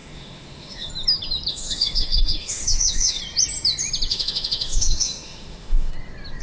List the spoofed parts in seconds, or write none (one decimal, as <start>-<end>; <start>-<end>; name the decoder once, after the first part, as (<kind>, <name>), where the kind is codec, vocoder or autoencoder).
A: 0.0-0.9 (autoencoder, DAC-VAE); 1.5-3.2; 4.1-5.9